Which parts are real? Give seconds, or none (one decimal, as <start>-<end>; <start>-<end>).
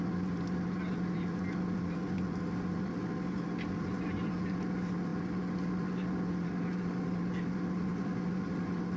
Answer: 0.0-9.0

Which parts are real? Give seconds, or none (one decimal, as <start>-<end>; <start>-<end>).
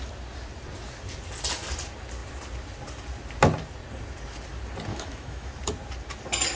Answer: 0.0-4.9; 5.5-6.6